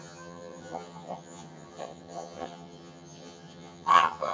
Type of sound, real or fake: fake